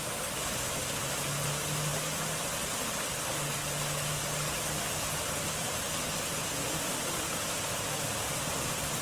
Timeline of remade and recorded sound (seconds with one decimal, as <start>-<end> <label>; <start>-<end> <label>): 0.0-9.0 recorded